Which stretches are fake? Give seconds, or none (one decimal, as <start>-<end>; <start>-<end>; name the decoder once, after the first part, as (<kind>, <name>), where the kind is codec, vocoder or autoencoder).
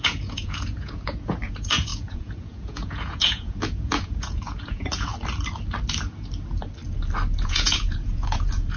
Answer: 0.0-5.1 (vocoder, Vocos); 7.4-8.8